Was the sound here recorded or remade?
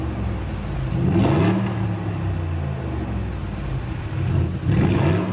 recorded